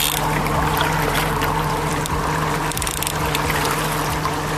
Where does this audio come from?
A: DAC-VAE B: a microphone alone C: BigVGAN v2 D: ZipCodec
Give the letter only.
B